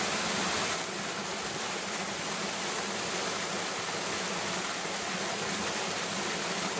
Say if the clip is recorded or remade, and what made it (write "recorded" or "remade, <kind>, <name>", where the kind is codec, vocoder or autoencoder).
recorded